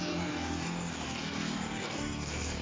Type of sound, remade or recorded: remade